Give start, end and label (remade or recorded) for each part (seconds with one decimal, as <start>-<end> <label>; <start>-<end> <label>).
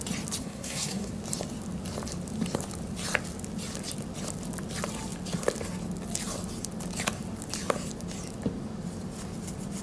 0.0-0.4 recorded; 0.4-1.1 remade; 1.1-9.8 recorded